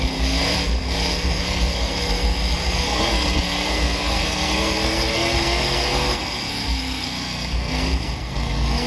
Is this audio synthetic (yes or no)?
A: yes